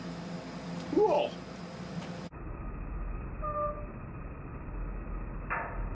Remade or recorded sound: recorded